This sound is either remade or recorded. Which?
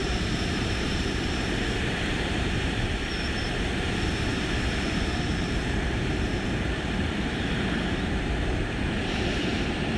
remade